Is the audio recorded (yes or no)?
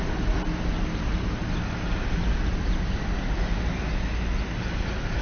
yes